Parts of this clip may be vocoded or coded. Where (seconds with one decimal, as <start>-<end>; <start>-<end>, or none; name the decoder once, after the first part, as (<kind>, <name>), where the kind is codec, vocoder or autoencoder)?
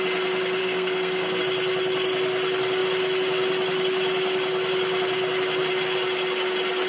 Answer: 0.6-1.4 (codec, SNAC)